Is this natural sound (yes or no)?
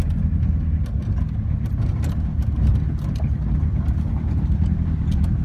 yes